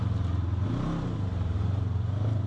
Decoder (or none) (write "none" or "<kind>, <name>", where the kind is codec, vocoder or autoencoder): none